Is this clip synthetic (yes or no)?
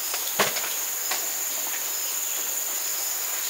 no